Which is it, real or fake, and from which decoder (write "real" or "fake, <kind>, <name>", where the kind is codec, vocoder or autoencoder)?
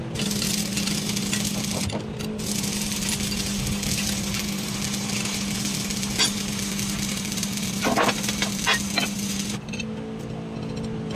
real